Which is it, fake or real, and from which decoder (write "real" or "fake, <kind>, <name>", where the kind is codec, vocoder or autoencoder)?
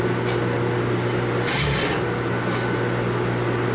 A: real